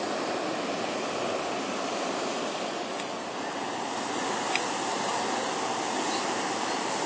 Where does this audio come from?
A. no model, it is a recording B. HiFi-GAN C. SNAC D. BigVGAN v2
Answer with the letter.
A